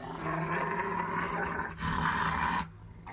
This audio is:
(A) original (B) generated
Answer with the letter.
A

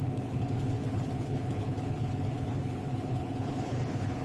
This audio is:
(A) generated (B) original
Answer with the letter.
A